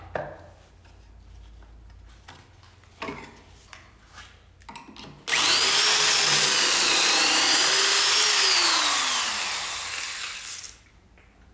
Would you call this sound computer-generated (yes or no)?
no